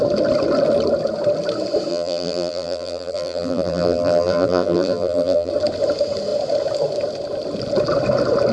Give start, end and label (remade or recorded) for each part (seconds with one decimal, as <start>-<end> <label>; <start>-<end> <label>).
0.0-1.9 recorded; 1.9-5.5 remade; 5.5-8.5 recorded